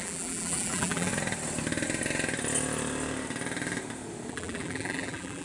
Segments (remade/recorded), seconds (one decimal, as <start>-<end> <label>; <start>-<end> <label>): 0.0-1.1 remade; 1.1-4.3 recorded; 4.3-5.4 remade